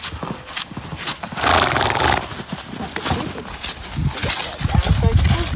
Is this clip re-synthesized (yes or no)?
no